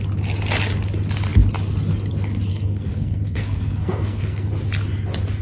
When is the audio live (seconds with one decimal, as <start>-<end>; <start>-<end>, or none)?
0.0-2.5; 4.5-5.4